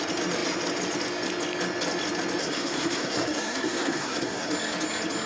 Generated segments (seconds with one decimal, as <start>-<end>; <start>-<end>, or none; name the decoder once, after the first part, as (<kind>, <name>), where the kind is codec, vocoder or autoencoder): 2.4-4.5 (codec, SNAC)